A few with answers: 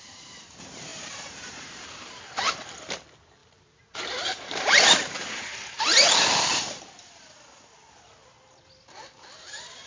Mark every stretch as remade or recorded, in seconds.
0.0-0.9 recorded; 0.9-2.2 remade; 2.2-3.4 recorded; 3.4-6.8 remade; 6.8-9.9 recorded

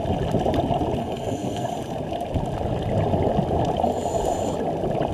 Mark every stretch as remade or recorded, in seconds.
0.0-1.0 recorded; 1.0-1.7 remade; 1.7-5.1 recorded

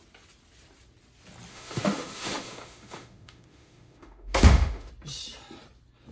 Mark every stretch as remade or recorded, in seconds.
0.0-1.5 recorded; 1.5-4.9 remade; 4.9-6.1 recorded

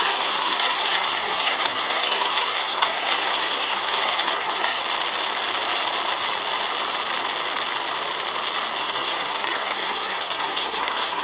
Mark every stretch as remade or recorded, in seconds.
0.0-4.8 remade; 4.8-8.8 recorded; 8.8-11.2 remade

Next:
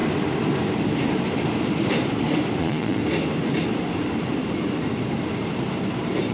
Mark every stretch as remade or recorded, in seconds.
0.0-2.6 recorded; 2.6-3.0 remade; 3.0-6.3 recorded

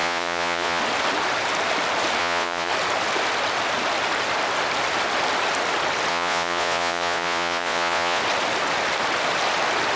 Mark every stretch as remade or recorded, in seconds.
0.0-0.8 remade; 0.8-2.2 recorded; 2.2-2.7 remade; 2.7-6.1 recorded; 6.1-8.2 remade; 8.2-10.0 recorded

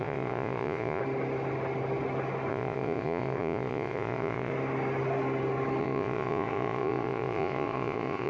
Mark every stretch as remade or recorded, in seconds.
0.0-1.0 remade; 1.0-2.5 recorded; 2.5-4.5 remade; 4.5-5.8 recorded; 5.8-8.3 remade